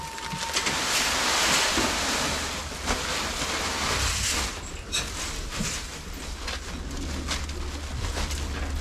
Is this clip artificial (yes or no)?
no